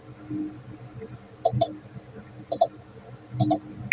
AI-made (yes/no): no